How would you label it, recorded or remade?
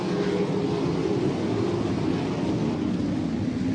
recorded